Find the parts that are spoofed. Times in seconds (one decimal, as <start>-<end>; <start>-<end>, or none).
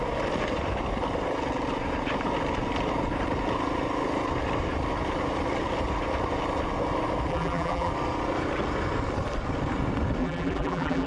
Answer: 7.3-7.9; 10.2-11.1